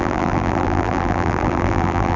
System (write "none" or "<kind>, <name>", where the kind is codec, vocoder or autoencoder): vocoder, BigVGAN v2